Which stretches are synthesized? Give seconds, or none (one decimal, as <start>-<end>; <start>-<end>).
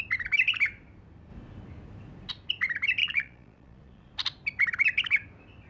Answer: 3.0-4.1